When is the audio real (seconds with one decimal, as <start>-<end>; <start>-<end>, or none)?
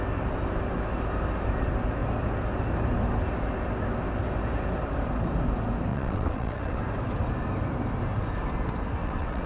0.0-5.9; 6.8-9.0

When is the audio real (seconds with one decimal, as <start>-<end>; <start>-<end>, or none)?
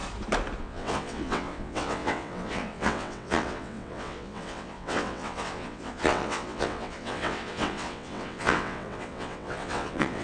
0.0-0.6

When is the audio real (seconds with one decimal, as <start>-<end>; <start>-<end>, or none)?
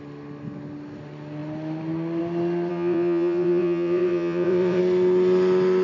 0.0-2.7; 4.8-5.8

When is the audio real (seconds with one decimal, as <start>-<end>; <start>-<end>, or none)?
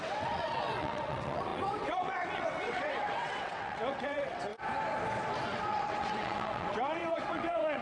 4.5-5.4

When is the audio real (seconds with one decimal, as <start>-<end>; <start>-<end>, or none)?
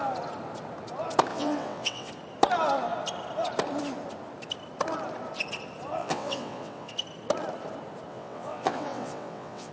0.0-1.3; 2.1-6.0; 6.9-8.1